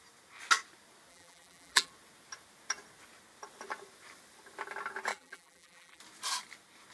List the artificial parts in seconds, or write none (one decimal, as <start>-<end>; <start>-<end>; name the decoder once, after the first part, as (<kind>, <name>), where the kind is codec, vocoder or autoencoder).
1.1-1.9 (vocoder, BigVGAN v2); 5.1-6.0